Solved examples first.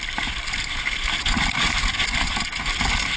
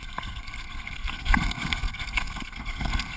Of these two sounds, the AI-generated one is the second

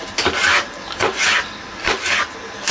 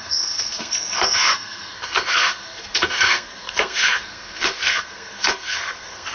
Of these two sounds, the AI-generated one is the second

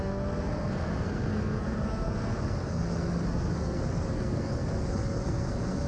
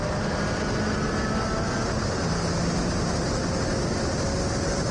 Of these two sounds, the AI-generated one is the first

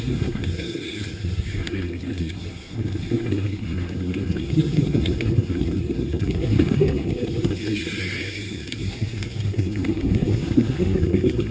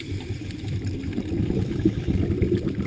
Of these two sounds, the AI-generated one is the first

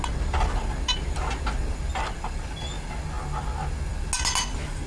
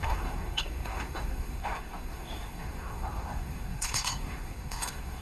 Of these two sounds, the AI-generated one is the second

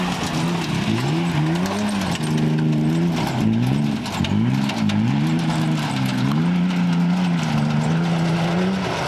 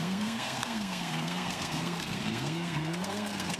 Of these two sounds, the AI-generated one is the second